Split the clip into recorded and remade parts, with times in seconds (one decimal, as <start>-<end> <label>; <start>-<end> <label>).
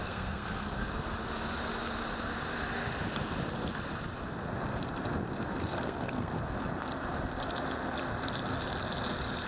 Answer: 0.0-0.8 remade; 0.8-5.6 recorded; 5.6-6.3 remade; 6.3-9.5 recorded